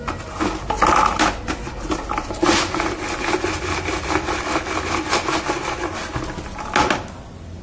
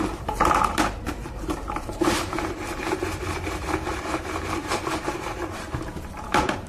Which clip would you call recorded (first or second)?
first